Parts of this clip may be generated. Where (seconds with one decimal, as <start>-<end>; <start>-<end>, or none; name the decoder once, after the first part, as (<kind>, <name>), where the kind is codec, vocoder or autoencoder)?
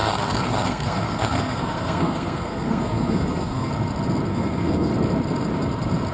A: 0.0-3.7 (codec, SNAC); 4.3-4.9